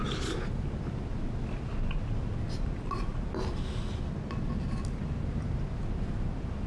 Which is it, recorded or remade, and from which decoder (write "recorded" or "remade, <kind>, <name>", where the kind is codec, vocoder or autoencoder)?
recorded